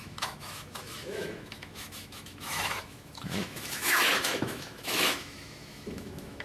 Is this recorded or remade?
remade